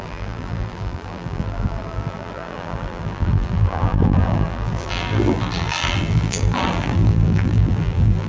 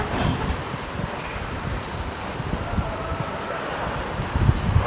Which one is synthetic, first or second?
first